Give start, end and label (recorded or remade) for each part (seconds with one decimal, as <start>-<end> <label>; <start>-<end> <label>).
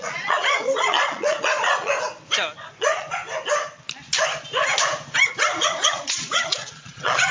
0.0-1.9 remade; 1.9-2.7 recorded; 2.7-3.2 remade; 3.2-5.5 recorded; 5.5-7.3 remade